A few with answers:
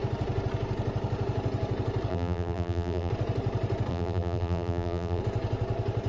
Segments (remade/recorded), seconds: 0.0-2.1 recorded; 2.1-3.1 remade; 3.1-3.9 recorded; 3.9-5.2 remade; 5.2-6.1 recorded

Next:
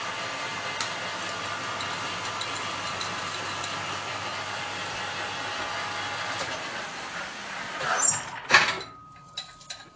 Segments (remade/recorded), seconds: 0.0-0.5 remade; 0.5-2.1 recorded; 2.1-4.3 remade; 4.3-6.2 recorded; 6.2-7.4 remade; 7.4-9.6 recorded; 9.6-10.0 remade